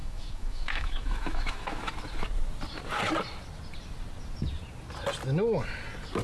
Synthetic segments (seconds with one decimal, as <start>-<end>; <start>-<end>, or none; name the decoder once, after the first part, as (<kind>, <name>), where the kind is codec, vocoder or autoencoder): 0.0-1.8 (autoencoder, DAC-VAE)

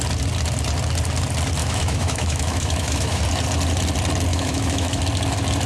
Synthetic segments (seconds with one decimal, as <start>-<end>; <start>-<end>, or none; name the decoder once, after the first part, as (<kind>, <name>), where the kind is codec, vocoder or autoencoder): 1.6-3.2 (autoencoder, DAC-VAE); 4.3-5.0